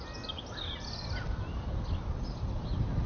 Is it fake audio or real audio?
real